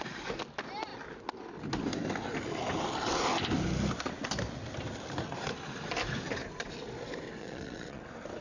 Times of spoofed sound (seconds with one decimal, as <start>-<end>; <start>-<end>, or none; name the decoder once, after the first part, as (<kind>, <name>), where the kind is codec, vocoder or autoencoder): 7.4-8.0 (vocoder, Vocos)